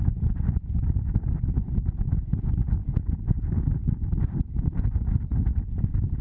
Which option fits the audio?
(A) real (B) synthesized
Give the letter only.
A